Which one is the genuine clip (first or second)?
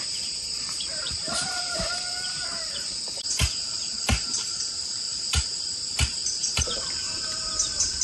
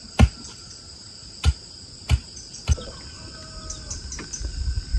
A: second